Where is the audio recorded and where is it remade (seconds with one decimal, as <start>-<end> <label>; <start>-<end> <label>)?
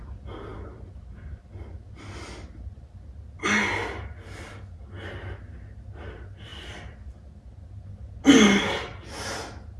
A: 0.0-9.8 recorded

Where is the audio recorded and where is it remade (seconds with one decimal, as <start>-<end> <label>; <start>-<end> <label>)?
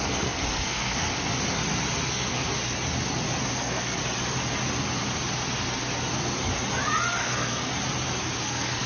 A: 0.0-1.3 remade; 1.3-2.1 recorded; 2.1-2.5 remade; 2.5-3.5 recorded; 3.5-4.0 remade; 4.0-7.2 recorded; 7.2-7.7 remade; 7.7-8.4 recorded; 8.4-8.9 remade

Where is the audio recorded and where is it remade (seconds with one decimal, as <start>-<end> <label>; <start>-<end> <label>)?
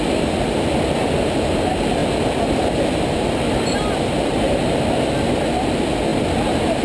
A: 0.0-2.0 recorded; 2.0-4.6 remade; 4.6-6.8 recorded